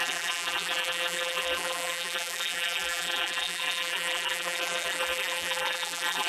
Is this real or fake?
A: fake